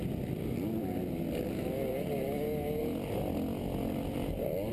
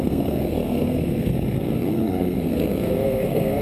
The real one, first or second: first